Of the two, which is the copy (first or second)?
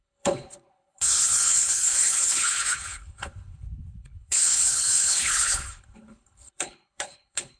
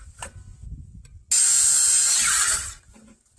first